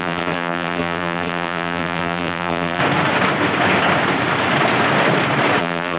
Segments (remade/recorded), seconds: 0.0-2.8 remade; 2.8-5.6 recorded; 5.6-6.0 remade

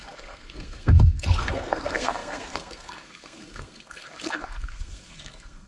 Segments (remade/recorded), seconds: 0.0-5.7 remade

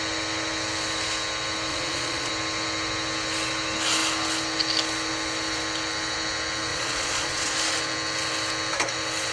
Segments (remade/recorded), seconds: 0.0-1.7 recorded; 1.7-2.3 remade; 2.3-6.7 recorded; 6.7-7.5 remade; 7.5-9.3 recorded

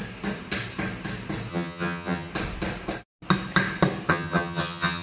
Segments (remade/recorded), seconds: 0.0-1.5 recorded; 1.5-2.3 remade; 2.3-4.1 recorded; 4.1-5.0 remade

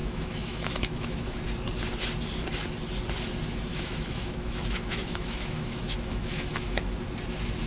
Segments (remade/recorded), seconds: 0.0-1.4 remade; 1.4-3.7 recorded; 3.7-7.0 remade; 7.0-7.7 recorded